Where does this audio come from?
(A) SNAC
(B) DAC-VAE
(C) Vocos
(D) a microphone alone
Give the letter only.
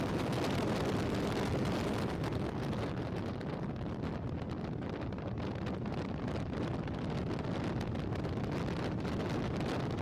D